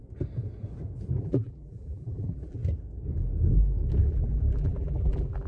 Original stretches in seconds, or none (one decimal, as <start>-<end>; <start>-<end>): 0.0-1.2; 2.6-4.0